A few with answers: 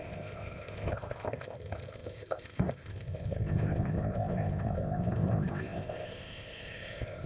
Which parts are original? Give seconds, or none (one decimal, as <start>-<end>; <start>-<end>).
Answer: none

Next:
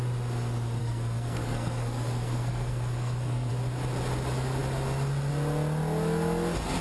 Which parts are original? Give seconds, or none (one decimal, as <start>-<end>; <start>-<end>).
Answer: 0.0-0.8; 3.5-6.8

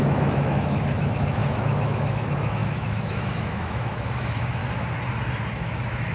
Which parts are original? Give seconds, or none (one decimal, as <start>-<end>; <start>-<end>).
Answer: 4.6-5.5